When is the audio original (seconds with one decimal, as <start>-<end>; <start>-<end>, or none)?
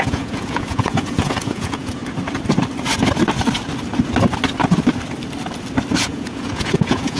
2.0-6.0